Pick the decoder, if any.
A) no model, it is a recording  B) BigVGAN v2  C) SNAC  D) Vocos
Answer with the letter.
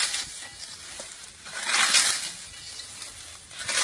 A